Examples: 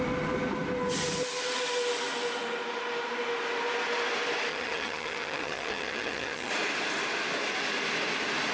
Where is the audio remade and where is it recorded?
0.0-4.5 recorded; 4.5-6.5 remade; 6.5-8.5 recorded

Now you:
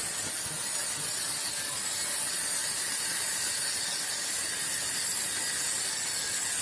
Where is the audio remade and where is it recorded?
0.0-6.6 recorded

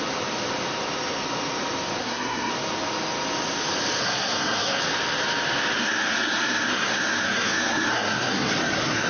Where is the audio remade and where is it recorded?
0.0-2.0 recorded; 2.0-2.5 remade; 2.5-4.0 recorded; 4.0-4.8 remade; 4.8-5.8 recorded; 5.8-9.1 remade

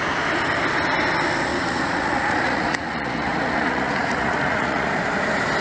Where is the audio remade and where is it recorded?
0.0-1.5 recorded; 1.5-4.9 remade; 4.9-5.6 recorded

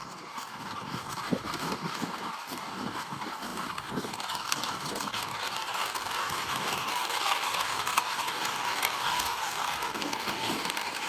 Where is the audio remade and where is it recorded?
0.0-11.1 remade